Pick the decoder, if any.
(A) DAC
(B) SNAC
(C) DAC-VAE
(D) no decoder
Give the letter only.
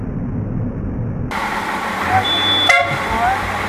D